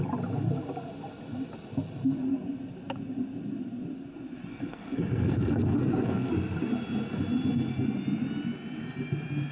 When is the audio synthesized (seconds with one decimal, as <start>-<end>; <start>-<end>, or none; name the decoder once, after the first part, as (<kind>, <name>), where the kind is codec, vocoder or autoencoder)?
4.5-6.3 (codec, SNAC)